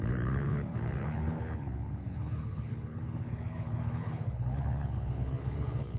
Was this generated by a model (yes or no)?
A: yes